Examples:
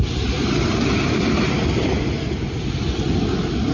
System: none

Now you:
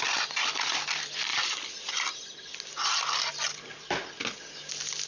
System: none